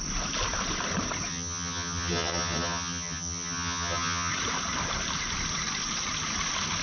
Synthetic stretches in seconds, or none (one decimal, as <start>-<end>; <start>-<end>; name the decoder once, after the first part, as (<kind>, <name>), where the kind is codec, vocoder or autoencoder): 1.3-4.3 (vocoder, HiFi-GAN)